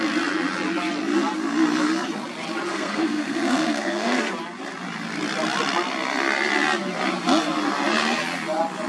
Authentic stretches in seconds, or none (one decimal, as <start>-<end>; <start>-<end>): 0.0-2.7; 4.3-8.9